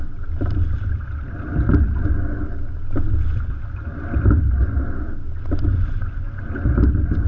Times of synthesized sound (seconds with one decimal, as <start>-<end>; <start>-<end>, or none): 5.7-6.4

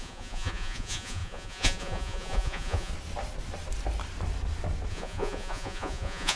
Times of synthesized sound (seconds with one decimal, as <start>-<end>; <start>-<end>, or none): 0.0-2.9; 4.9-6.4

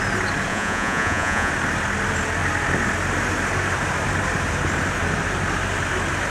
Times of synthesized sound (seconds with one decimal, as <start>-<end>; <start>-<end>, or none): 0.5-1.5